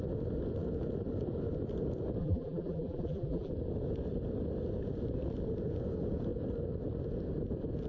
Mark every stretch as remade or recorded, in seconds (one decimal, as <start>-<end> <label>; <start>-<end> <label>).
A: 0.0-2.2 recorded; 2.2-3.5 remade; 3.5-7.9 recorded